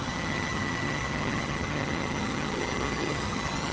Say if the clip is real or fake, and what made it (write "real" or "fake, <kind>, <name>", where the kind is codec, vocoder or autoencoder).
fake, vocoder, HiFi-GAN